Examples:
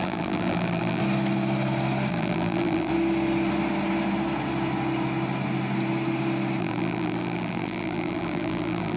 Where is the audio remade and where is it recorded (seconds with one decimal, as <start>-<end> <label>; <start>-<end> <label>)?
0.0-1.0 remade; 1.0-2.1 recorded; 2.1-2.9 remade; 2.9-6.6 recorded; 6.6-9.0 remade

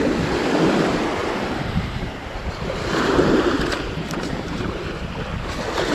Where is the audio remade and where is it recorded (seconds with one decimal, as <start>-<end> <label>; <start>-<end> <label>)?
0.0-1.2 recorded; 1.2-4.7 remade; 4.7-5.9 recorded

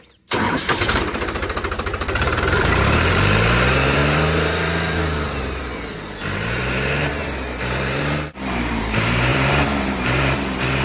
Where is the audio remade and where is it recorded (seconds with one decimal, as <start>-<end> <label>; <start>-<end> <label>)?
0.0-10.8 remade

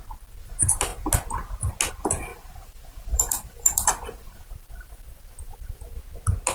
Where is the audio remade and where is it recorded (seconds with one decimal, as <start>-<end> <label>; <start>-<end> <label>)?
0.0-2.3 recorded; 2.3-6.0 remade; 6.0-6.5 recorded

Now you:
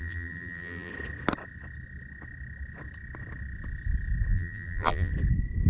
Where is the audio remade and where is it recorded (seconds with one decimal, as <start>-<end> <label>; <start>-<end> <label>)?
0.0-0.9 remade; 0.9-4.3 recorded; 4.3-5.1 remade; 5.1-5.7 recorded

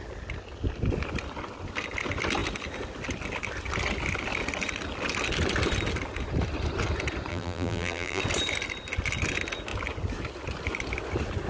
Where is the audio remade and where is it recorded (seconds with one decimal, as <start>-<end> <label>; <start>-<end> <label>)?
0.0-7.3 recorded; 7.3-8.2 remade; 8.2-11.5 recorded

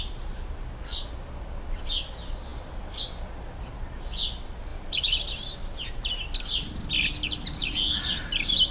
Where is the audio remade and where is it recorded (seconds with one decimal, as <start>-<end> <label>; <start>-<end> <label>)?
0.0-2.5 recorded; 2.5-3.0 remade; 3.0-4.7 recorded; 4.7-5.9 remade; 5.9-7.6 recorded; 7.6-8.2 remade; 8.2-8.7 recorded

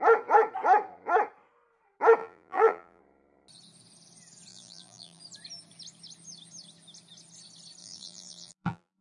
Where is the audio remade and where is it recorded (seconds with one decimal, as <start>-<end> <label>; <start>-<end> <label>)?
0.0-2.2 recorded; 2.2-3.0 remade; 3.0-4.5 recorded; 4.5-5.2 remade; 5.2-7.8 recorded; 7.8-9.0 remade